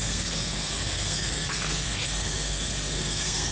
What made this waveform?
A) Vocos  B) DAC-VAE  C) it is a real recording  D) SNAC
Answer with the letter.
D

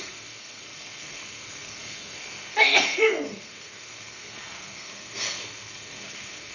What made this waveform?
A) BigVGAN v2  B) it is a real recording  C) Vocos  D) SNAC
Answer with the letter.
D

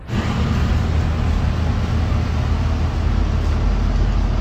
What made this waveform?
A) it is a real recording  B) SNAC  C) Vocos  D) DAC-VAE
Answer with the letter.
A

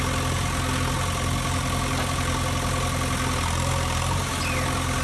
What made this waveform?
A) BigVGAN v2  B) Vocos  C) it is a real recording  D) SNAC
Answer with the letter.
C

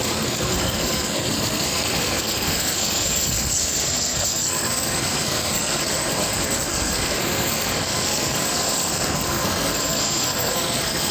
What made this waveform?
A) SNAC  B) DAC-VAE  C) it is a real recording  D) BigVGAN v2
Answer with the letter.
A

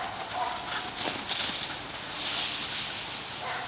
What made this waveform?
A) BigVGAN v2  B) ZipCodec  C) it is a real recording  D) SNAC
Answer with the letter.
C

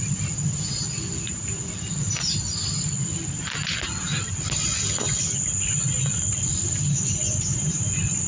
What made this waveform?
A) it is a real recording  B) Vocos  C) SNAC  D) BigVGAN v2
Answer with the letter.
A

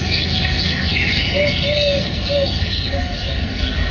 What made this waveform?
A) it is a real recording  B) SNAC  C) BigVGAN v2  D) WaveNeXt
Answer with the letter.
B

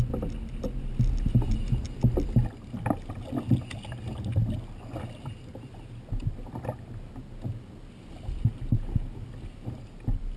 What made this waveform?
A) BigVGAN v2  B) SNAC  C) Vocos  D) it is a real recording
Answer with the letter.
D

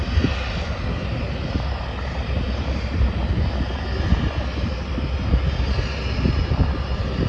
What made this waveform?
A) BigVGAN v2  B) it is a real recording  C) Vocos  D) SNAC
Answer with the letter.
B